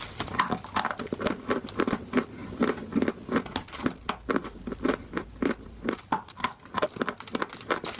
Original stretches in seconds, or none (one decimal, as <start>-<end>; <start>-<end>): 0.0-8.0